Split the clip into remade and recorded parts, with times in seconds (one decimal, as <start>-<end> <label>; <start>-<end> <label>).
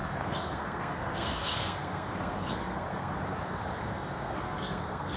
0.0-3.1 remade; 3.1-3.6 recorded; 3.6-5.2 remade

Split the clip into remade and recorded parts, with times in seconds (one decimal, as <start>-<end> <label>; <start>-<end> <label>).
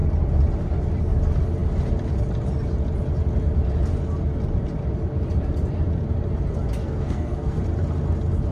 0.0-6.8 recorded; 6.8-7.6 remade; 7.6-8.5 recorded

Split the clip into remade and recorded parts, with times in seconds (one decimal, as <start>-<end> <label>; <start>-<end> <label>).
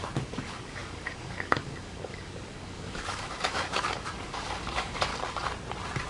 0.0-5.1 remade; 5.1-6.1 recorded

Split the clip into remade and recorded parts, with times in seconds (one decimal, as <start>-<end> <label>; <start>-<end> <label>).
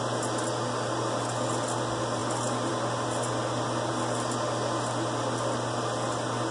0.0-6.5 recorded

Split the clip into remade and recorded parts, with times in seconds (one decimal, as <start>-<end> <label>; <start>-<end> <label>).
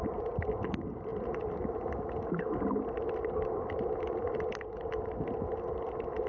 0.0-6.3 recorded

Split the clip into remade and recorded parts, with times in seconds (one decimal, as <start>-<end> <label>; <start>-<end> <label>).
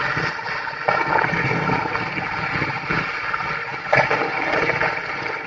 0.0-5.5 recorded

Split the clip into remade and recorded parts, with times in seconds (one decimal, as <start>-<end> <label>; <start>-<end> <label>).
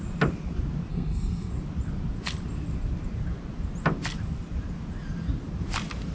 0.0-0.9 recorded; 0.9-1.5 remade; 1.5-6.1 recorded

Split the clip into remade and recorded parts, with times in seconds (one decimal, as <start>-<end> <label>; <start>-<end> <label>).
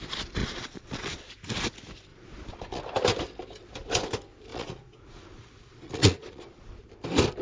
0.0-0.4 recorded; 0.4-1.3 remade; 1.3-2.1 recorded; 2.1-2.8 remade; 2.8-4.5 recorded; 4.5-6.7 remade; 6.7-7.4 recorded